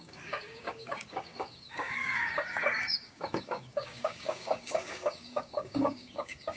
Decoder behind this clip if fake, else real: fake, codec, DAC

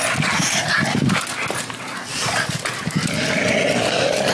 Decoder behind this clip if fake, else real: real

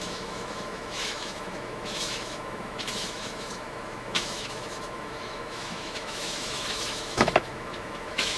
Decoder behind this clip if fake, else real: fake, autoencoder, DAC-VAE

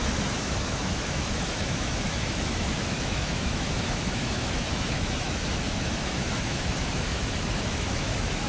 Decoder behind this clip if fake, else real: fake, autoencoder, DAC-VAE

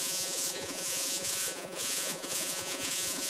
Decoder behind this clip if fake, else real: fake, vocoder, Vocos